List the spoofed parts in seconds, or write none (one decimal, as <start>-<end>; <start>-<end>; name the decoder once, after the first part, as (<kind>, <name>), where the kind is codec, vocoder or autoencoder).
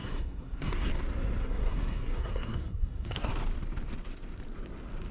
0.0-0.9 (codec, SNAC); 1.4-3.3